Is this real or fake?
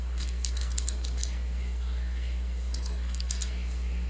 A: fake